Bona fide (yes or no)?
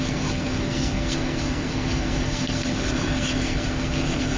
no